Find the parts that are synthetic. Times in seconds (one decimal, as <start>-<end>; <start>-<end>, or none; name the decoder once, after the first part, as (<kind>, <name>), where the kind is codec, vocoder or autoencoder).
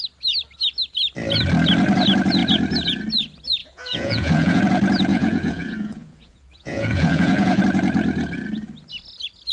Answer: 3.6-4.6 (vocoder, Vocos); 5.1-7.6